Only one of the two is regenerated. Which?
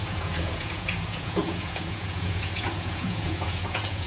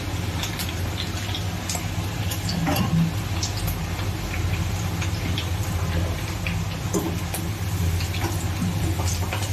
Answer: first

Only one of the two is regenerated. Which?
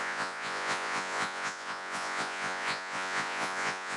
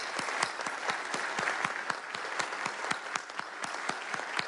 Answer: first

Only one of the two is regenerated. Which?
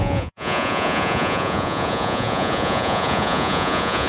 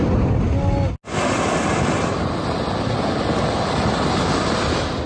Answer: first